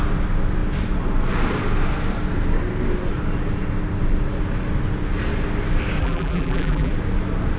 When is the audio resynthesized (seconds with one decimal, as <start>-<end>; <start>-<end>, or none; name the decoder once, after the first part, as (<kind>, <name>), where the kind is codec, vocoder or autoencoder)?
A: 6.0-6.9 (vocoder, BigVGAN v2)